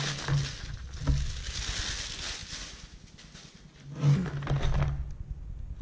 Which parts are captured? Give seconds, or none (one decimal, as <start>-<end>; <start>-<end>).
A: 0.0-5.8

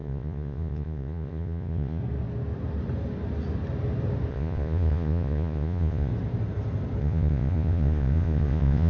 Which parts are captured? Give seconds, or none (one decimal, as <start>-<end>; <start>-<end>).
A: 2.0-4.3; 6.1-7.0

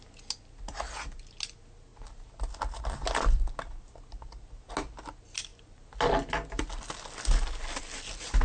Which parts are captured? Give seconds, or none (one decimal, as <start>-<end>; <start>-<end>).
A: 0.0-8.4

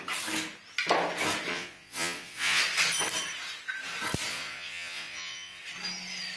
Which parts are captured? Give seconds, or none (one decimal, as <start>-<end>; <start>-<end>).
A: 0.0-1.5; 2.6-4.3; 5.6-6.4

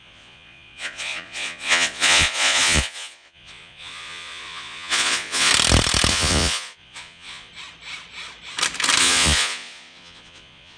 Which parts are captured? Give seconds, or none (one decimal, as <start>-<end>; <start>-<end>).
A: 5.5-6.1; 7.5-9.0

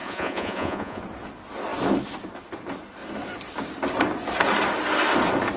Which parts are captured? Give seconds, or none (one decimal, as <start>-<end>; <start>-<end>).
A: 1.0-5.6

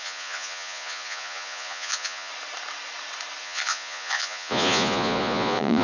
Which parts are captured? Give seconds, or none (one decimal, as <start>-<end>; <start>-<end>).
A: 2.3-3.4

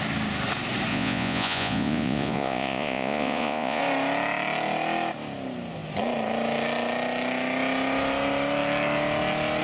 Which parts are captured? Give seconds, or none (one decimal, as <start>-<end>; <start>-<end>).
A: 0.0-0.9; 3.8-9.6